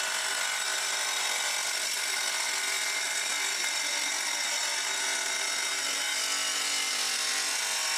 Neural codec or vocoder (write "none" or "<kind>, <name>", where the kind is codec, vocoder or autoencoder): none